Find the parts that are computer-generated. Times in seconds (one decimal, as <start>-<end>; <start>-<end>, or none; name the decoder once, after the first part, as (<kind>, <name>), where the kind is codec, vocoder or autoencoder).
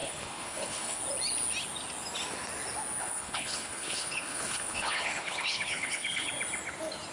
0.0-1.0 (codec, HILCodec); 3.0-6.3